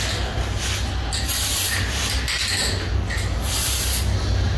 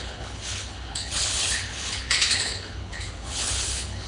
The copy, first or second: second